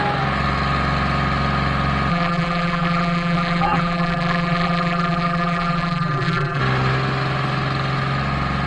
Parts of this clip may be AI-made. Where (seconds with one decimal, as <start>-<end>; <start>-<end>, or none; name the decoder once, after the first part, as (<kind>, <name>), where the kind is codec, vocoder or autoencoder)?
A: 2.1-6.6 (vocoder, BigVGAN v2)